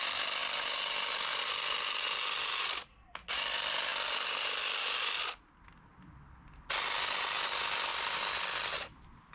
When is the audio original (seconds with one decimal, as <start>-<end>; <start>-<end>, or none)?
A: 0.0-7.9